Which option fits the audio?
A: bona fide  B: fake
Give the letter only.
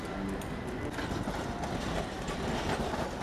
A